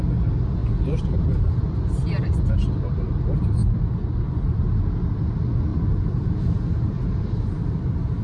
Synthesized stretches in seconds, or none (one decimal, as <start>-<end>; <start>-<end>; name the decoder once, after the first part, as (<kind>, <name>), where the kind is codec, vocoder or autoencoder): 0.6-2.7 (vocoder, BigVGAN v2); 3.6-4.2; 5.7-8.2